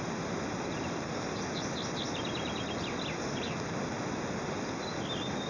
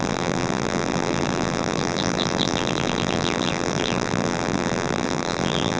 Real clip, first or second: first